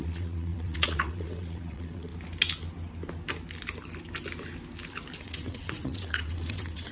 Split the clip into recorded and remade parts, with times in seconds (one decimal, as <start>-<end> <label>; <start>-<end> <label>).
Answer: 0.0-2.1 remade; 2.1-5.2 recorded; 5.2-6.9 remade